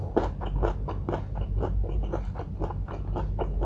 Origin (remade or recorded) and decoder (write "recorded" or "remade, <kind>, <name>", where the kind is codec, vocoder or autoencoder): recorded